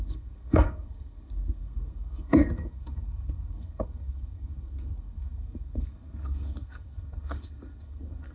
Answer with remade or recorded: remade